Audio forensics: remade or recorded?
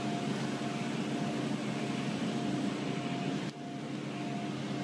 recorded